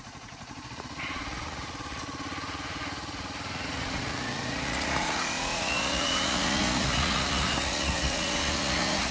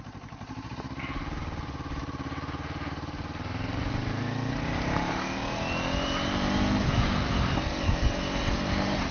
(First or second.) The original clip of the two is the second